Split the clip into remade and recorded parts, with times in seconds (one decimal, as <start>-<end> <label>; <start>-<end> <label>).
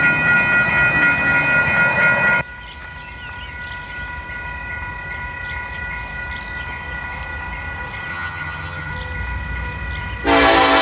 0.0-8.1 recorded; 8.1-8.9 remade; 8.9-10.8 recorded